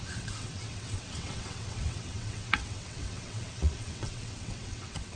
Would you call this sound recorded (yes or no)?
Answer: no